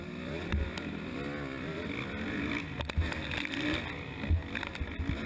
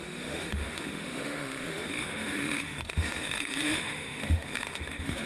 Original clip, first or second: first